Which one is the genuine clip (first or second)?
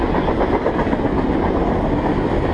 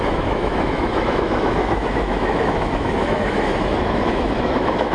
first